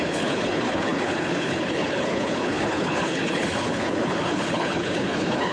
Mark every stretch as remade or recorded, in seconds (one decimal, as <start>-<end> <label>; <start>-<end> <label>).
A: 0.0-5.5 remade